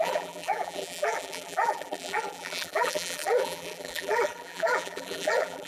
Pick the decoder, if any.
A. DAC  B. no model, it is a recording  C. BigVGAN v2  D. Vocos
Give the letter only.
C